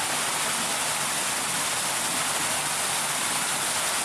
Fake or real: real